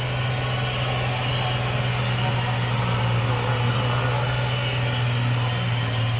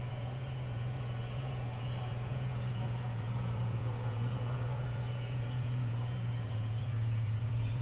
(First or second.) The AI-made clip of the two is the second